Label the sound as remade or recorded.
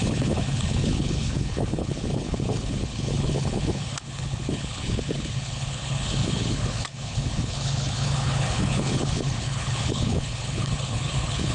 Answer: remade